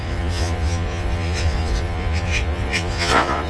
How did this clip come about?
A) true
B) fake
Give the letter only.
B